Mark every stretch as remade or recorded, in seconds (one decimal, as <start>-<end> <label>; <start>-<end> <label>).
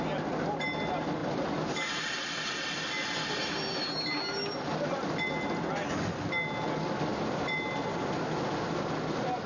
0.0-9.5 recorded